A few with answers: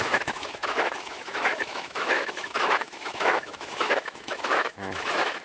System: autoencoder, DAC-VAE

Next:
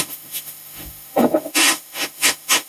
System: autoencoder, DAC-VAE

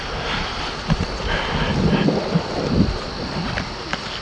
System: none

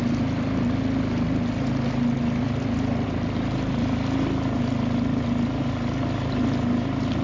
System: none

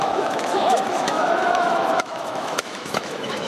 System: autoencoder, DAC-VAE